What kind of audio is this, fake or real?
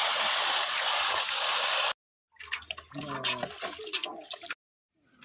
real